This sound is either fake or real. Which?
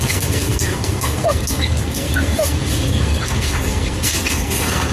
fake